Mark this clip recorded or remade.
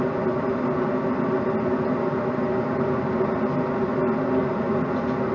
recorded